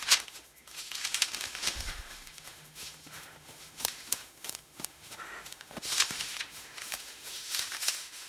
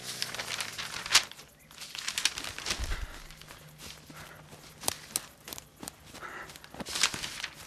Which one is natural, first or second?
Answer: second